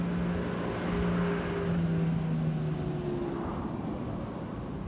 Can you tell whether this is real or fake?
real